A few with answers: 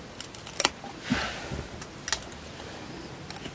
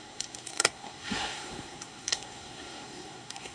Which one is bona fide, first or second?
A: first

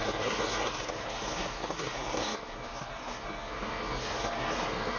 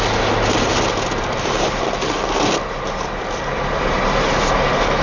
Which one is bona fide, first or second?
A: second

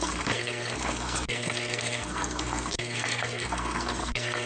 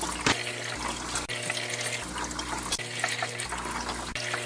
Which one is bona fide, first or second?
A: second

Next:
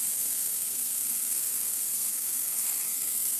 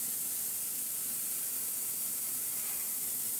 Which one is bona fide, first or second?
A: second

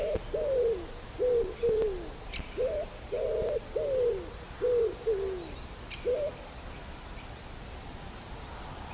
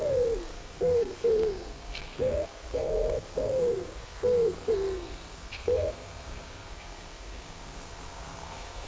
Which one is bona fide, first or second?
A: first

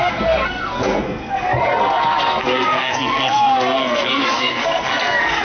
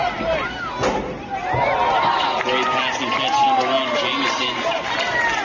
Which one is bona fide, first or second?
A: second